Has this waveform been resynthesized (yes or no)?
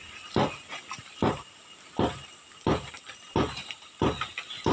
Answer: no